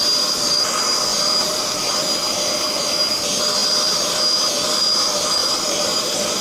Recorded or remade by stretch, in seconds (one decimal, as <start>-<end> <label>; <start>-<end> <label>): 0.0-1.1 recorded; 1.1-1.9 remade; 1.9-5.4 recorded; 5.4-6.0 remade; 6.0-6.4 recorded